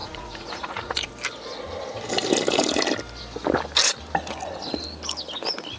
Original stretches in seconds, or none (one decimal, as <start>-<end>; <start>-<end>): 1.1-5.8